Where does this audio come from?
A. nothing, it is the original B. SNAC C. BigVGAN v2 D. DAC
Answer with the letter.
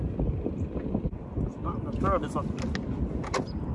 A